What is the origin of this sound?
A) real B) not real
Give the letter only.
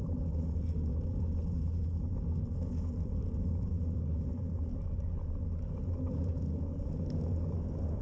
A